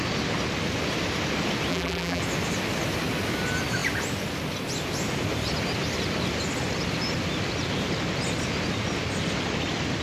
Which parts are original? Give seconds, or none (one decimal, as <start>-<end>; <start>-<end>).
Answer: 0.0-1.7; 2.2-10.0